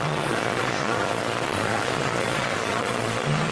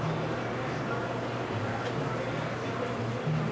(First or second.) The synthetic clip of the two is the first